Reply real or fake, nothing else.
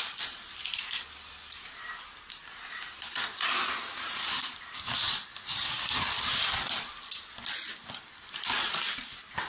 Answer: real